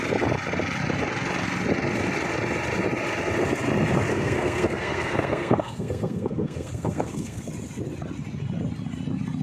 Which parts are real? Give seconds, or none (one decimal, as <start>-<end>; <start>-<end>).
0.0-4.1; 7.5-9.4

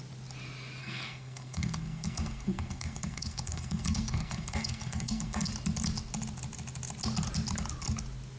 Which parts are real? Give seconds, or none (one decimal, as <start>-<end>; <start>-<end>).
0.0-0.8; 5.5-8.4

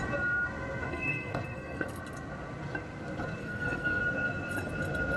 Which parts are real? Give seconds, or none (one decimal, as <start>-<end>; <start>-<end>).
0.0-0.9; 2.0-3.4; 4.0-5.2